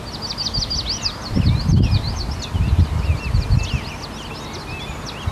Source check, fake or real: real